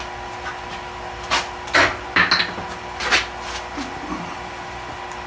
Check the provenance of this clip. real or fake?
real